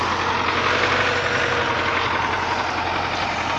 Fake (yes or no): no